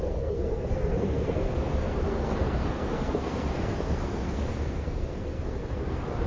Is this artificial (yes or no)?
yes